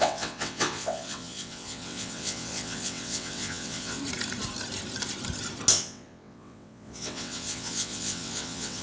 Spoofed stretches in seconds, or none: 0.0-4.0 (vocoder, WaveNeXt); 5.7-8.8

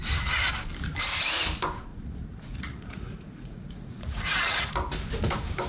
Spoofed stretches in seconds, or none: 1.9-4.7 (vocoder, Vocos)

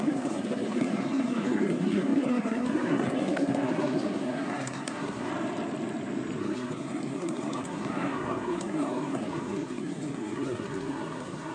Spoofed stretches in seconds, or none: 0.0-5.3 (codec, SNAC); 6.4-11.5

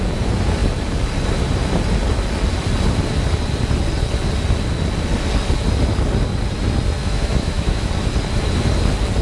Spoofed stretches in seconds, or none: 7.0-7.9 (autoencoder, DAC-VAE)

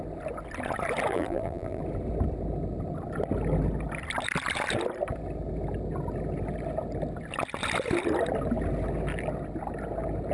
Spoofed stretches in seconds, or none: 1.1-1.8 (vocoder, BigVGAN v2)